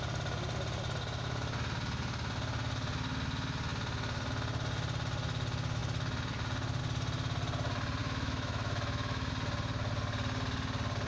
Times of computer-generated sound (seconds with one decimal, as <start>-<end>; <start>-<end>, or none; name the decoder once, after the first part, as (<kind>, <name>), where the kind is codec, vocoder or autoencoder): 8.0-9.3 (autoencoder, DAC-VAE)